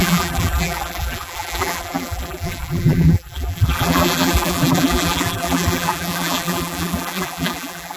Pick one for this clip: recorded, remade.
remade